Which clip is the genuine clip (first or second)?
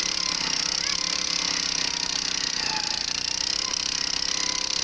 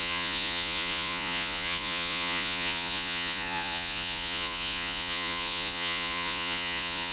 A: first